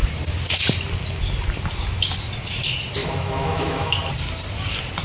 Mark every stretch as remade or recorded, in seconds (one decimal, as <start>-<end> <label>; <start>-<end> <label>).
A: 0.0-3.0 recorded; 3.0-3.9 remade; 3.9-5.0 recorded